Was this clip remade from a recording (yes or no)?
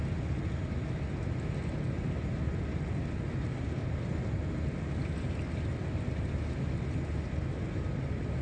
no